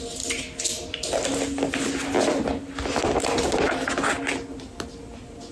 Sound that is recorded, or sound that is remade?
recorded